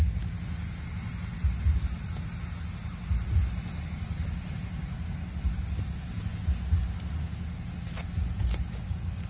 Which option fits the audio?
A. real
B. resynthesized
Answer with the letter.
A